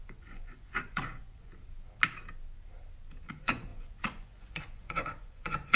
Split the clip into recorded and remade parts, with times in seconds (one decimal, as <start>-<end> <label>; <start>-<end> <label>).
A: 0.0-1.5 remade; 1.5-3.3 recorded; 3.3-5.8 remade